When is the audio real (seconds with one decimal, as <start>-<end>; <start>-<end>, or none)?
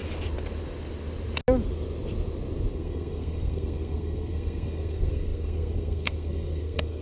0.0-2.7